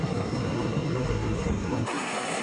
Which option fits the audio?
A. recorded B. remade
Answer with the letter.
B